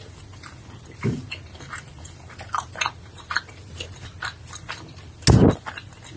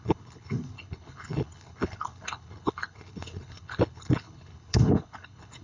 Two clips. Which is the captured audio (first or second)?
first